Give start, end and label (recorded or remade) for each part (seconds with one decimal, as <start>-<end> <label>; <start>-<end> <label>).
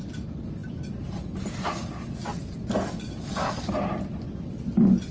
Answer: 0.0-5.1 recorded